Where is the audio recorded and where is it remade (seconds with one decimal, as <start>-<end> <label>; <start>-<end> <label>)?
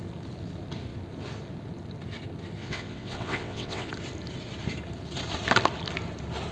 0.0-2.6 recorded; 2.6-3.9 remade; 3.9-6.5 recorded